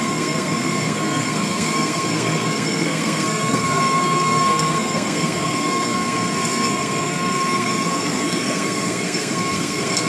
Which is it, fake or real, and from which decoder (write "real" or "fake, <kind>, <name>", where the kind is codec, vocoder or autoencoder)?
fake, codec, SNAC